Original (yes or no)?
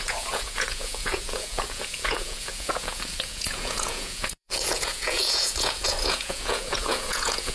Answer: no